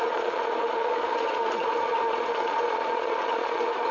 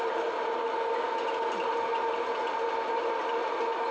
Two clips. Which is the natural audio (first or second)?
second